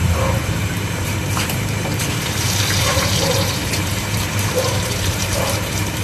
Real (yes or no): no